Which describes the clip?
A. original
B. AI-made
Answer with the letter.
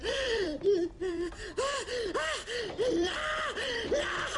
B